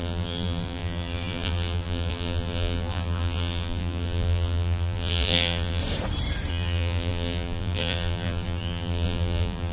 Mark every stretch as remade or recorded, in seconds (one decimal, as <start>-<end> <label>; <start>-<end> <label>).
0.0-5.8 remade; 5.8-6.5 recorded; 6.5-9.7 remade